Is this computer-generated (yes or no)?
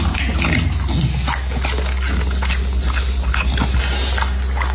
no